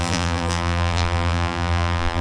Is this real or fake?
fake